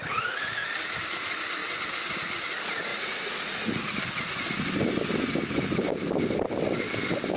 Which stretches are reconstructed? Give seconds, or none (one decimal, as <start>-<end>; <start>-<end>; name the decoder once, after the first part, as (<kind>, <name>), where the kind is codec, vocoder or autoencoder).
2.9-4.0 (vocoder, Vocos)